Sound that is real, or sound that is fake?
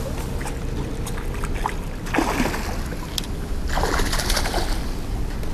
real